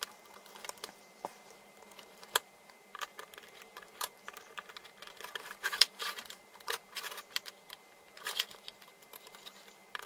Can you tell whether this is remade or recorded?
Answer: remade